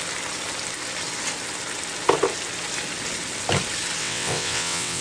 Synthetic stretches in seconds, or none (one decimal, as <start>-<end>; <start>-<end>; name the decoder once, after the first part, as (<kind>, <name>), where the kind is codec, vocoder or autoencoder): 4.0-5.0 (vocoder, WaveNeXt)